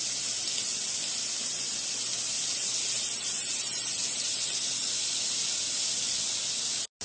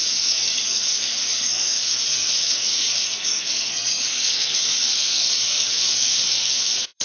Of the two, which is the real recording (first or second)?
first